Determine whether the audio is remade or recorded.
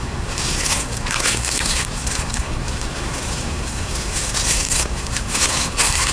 remade